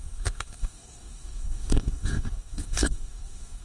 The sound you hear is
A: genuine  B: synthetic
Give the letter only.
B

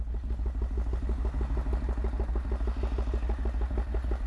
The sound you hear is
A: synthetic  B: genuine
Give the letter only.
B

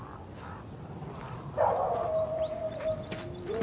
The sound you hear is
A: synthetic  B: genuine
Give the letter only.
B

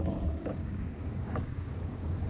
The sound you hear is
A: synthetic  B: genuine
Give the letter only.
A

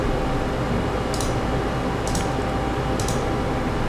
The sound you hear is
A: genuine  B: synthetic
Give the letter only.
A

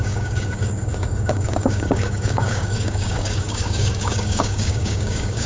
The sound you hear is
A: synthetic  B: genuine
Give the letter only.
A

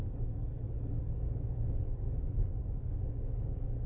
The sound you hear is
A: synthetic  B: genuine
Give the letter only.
A